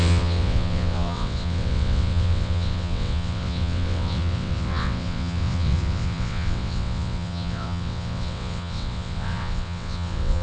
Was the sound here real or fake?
fake